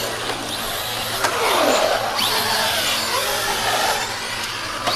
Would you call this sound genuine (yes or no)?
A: yes